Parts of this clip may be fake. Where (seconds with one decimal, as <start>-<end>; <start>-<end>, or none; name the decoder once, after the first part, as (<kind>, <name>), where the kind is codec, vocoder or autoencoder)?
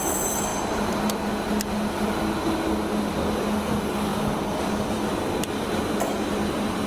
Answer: 0.5-1.3 (vocoder, BigVGAN v2); 4.1-5.1